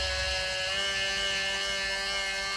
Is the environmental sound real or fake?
real